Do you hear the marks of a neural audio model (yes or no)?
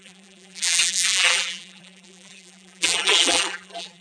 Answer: yes